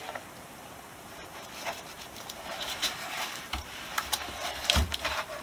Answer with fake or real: fake